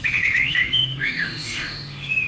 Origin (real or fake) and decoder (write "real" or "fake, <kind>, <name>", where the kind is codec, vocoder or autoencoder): fake, autoencoder, DAC-VAE